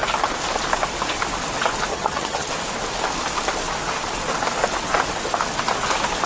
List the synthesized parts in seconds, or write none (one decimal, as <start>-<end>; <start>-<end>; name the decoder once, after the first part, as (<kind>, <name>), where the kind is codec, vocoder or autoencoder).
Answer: 1.9-2.5 (vocoder, HiFi-GAN)